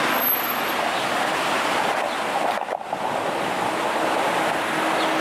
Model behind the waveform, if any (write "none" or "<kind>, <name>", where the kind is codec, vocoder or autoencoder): none